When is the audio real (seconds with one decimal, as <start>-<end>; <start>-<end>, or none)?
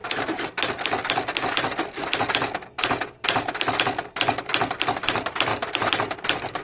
0.7-5.5; 6.1-6.6